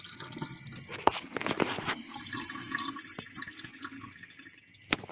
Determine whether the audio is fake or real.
real